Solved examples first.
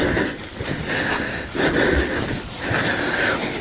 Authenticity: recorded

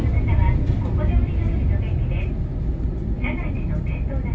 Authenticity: recorded